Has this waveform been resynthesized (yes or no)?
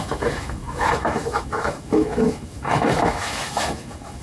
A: yes